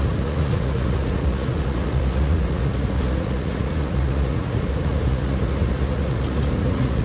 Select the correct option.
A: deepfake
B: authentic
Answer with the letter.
A